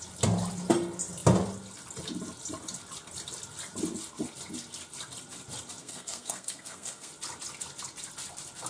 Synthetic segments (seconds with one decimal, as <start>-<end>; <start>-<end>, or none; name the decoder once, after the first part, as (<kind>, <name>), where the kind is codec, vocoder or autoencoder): 5.8-7.1 (codec, SNAC)